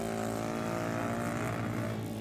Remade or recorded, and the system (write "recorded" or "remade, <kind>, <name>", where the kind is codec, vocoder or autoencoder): recorded